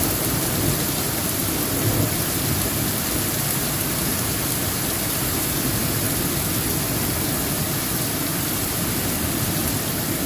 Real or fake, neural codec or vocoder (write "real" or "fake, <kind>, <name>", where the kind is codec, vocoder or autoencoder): real